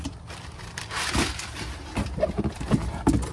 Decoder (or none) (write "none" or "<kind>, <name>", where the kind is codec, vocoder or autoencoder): none